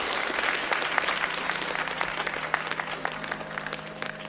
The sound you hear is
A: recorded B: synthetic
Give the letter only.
A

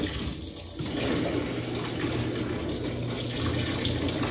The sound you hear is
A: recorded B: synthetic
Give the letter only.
A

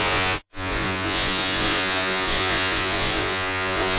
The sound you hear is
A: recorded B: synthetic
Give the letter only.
B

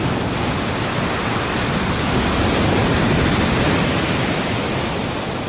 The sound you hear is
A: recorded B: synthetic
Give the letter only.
A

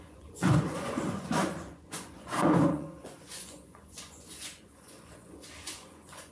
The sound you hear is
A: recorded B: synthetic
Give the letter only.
B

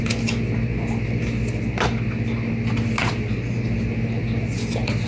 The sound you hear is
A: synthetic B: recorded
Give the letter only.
B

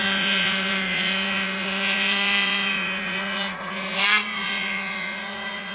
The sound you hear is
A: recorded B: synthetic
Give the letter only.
B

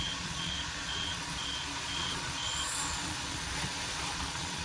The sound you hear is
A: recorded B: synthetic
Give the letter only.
B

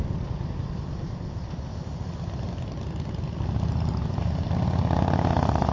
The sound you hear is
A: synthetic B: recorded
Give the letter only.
B